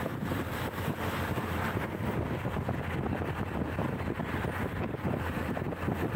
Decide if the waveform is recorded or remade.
remade